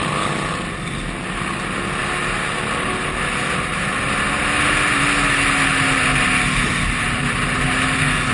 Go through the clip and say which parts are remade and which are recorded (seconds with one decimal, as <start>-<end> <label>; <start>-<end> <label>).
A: 0.0-8.3 recorded